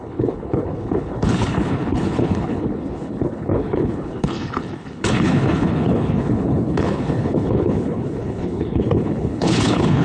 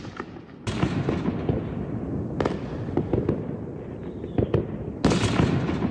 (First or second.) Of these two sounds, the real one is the second